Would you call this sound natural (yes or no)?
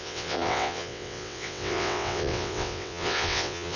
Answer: no